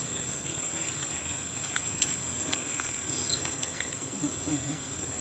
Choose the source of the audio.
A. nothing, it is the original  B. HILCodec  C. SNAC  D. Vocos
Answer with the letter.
C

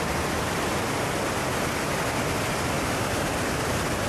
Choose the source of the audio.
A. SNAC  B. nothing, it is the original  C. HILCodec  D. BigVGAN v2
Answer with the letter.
B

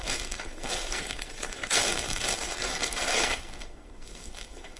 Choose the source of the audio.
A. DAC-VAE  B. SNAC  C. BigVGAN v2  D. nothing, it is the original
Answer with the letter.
B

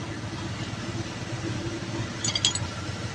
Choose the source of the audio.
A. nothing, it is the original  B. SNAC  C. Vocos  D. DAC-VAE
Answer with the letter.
A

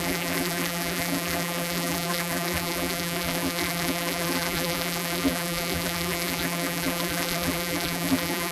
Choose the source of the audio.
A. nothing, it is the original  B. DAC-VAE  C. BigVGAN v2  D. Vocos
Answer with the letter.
C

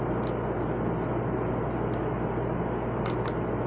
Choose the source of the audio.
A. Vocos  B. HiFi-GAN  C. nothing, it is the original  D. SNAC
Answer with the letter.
C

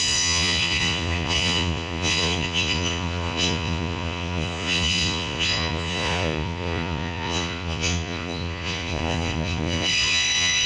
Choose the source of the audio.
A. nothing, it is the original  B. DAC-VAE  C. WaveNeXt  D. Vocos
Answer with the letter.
D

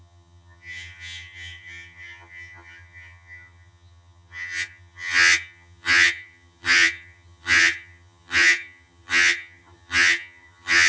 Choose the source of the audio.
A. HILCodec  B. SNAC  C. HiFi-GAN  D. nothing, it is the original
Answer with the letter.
C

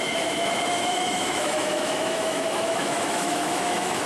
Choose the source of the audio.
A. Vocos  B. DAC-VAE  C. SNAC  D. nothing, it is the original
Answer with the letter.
B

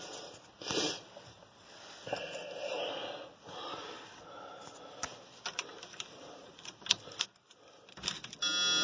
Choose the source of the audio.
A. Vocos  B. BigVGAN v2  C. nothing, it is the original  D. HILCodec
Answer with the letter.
C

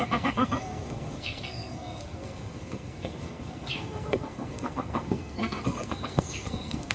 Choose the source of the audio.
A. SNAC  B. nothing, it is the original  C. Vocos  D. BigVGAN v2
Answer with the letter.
A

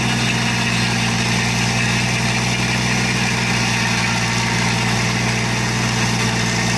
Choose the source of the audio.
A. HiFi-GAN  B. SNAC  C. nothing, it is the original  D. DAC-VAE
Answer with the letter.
C